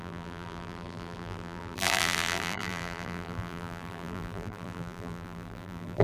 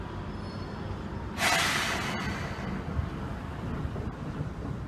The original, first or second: second